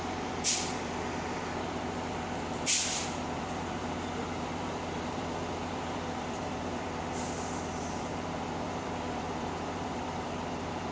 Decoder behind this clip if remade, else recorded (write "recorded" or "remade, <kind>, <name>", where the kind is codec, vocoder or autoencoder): remade, vocoder, BigVGAN v2